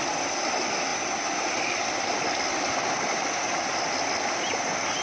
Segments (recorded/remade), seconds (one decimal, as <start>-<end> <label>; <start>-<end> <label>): 0.0-5.0 recorded